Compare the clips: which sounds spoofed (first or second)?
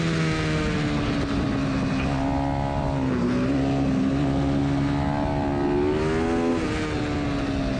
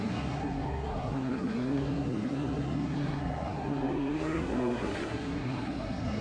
second